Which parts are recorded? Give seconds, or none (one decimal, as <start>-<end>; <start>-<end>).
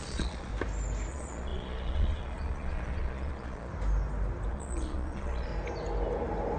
0.5-1.1; 3.7-4.5; 5.5-6.6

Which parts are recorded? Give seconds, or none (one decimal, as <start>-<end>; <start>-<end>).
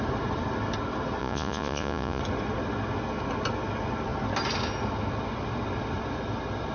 0.0-1.2; 2.2-6.7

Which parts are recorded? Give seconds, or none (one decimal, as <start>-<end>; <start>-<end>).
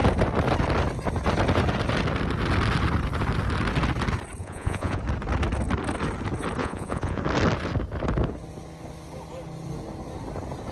0.0-4.4; 5.0-6.6; 7.2-10.7